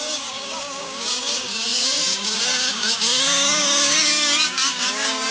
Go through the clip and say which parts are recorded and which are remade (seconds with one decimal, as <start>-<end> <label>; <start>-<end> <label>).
0.0-5.3 remade